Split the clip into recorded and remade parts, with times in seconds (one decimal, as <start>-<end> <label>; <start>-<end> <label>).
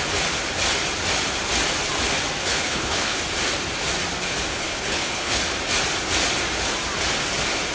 0.0-2.4 recorded; 2.4-3.2 remade; 3.2-4.5 recorded; 4.5-5.4 remade; 5.4-7.7 recorded